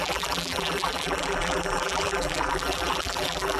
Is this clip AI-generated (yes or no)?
yes